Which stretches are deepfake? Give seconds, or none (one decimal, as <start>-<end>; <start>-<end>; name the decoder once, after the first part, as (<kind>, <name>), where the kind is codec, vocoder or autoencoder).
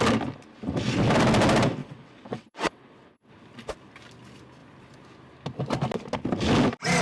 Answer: 1.8-3.3 (vocoder, WaveNeXt)